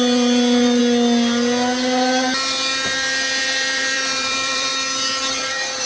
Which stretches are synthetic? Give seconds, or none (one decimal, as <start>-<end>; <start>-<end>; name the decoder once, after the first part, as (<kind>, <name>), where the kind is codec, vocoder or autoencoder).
0.0-0.8 (vocoder, BigVGAN v2); 3.4-4.7; 5.3-5.9

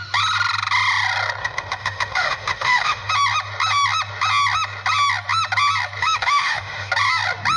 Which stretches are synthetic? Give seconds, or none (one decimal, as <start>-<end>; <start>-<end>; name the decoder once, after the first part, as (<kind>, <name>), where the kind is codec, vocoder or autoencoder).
1.4-3.1 (autoencoder, DAC-VAE); 6.0-6.9

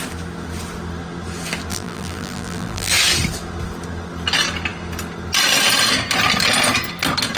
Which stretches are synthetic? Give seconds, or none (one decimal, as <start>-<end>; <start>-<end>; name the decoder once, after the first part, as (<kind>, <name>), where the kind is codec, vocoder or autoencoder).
1.7-2.9 (vocoder, BigVGAN v2)

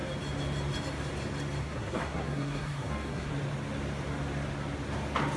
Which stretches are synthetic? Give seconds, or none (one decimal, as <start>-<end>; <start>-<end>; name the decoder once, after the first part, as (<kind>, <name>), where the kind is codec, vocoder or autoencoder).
1.6-3.3 (codec, SNAC)

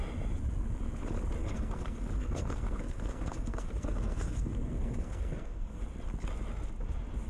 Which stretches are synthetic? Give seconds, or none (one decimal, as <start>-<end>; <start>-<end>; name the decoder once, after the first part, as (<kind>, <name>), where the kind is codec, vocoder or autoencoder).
1.4-5.8 (codec, SNAC)

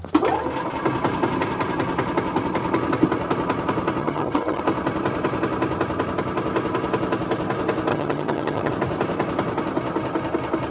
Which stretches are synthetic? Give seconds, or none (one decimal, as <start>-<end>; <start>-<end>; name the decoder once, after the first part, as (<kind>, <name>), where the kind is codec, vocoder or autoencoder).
4.0-4.6 (vocoder, HiFi-GAN); 7.9-8.7

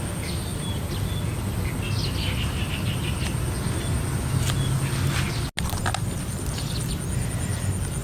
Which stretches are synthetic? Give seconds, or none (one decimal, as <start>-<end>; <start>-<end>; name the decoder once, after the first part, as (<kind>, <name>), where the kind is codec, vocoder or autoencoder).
none